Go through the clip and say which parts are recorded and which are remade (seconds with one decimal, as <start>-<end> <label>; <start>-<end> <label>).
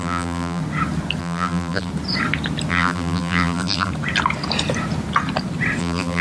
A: 0.0-0.6 remade; 0.6-1.2 recorded; 1.2-1.9 remade; 1.9-2.7 recorded; 2.7-3.9 remade; 3.9-5.8 recorded; 5.8-6.2 remade